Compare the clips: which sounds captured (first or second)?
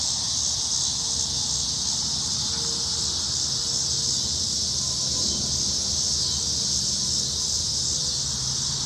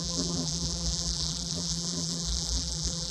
first